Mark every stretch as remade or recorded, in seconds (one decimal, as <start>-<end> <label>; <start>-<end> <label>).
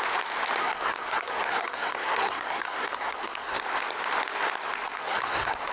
0.0-0.6 recorded; 0.6-3.6 remade; 3.6-5.0 recorded; 5.0-5.7 remade